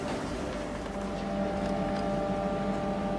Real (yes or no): yes